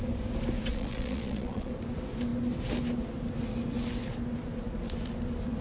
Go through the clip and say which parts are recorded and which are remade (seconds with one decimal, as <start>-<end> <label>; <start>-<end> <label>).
0.0-0.7 recorded; 0.7-1.7 remade; 1.7-5.6 recorded